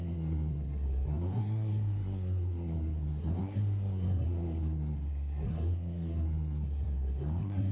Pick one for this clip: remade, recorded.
remade